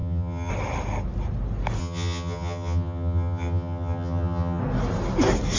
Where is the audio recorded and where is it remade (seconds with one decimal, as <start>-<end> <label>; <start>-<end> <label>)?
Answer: 0.0-0.5 remade; 0.5-1.8 recorded; 1.8-4.6 remade; 4.6-5.6 recorded